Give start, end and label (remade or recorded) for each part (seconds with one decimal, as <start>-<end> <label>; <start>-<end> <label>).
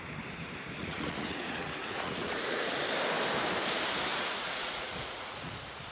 0.0-0.8 recorded; 0.8-2.8 remade; 2.8-4.1 recorded; 4.1-5.5 remade; 5.5-5.9 recorded